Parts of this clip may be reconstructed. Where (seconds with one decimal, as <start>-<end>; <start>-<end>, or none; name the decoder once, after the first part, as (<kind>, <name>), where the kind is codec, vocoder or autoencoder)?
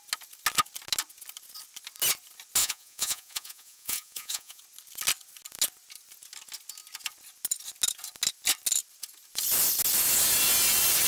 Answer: 2.6-4.6 (vocoder, Vocos)